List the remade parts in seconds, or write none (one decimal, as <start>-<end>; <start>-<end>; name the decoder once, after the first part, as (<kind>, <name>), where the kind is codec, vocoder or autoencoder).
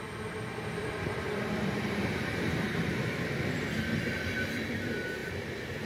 0.5-3.5 (vocoder, BigVGAN v2); 5.2-5.9